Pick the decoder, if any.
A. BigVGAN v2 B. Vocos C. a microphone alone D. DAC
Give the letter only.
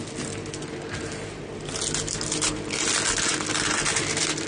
C